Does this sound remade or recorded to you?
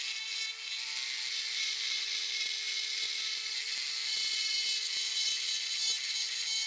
recorded